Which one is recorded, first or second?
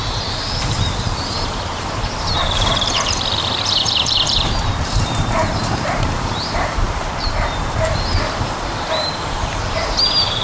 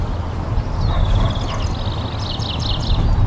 second